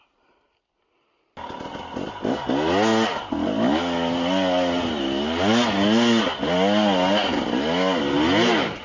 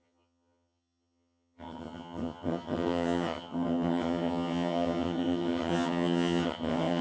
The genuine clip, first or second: first